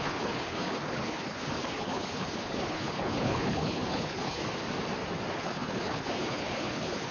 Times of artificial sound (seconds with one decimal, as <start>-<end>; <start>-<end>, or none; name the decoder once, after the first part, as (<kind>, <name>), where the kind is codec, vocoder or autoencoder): 0.0-4.4 (codec, HILCodec); 5.3-7.1